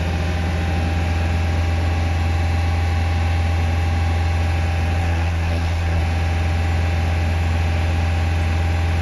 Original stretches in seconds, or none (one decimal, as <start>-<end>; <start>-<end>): 0.0-5.0; 6.0-9.0